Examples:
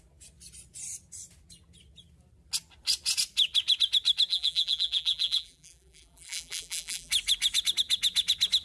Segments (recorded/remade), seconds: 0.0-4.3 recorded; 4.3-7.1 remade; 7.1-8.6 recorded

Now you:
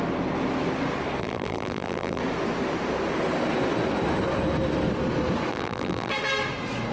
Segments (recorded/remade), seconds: 0.0-1.2 recorded; 1.2-2.2 remade; 2.2-5.5 recorded; 5.5-6.1 remade; 6.1-6.9 recorded

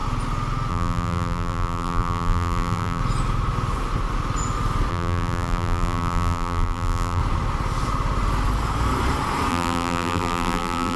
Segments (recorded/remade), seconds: 0.0-0.7 recorded; 0.7-3.0 remade; 3.0-4.9 recorded; 4.9-7.2 remade; 7.2-9.5 recorded; 9.5-11.0 remade

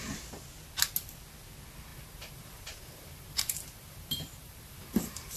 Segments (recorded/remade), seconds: 0.0-1.9 recorded; 1.9-5.4 remade

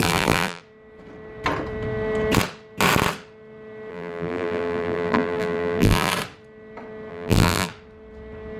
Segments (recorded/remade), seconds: 0.0-0.6 remade; 0.6-3.9 recorded; 3.9-6.1 remade; 6.1-7.1 recorded; 7.1-7.7 remade; 7.7-8.6 recorded

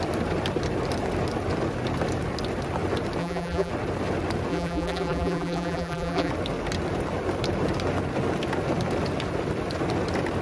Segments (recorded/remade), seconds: 0.0-3.2 recorded; 3.2-3.7 remade; 3.7-4.5 recorded; 4.5-6.3 remade; 6.3-10.4 recorded

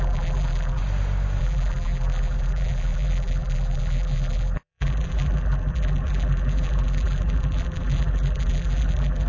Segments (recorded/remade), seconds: 0.0-0.8 remade; 0.8-1.4 recorded; 1.4-9.3 remade